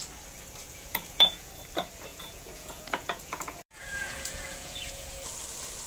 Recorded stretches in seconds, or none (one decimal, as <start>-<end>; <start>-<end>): 0.0-0.7; 1.5-2.1; 5.1-5.9